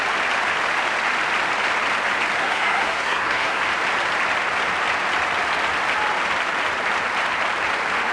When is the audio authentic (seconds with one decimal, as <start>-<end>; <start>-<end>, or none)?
0.0-2.4; 3.6-8.1